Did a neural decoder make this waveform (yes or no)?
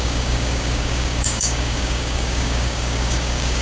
yes